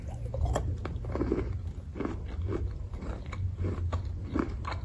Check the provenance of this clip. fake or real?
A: real